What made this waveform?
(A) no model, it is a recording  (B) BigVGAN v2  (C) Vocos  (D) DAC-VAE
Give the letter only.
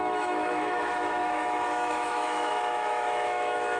D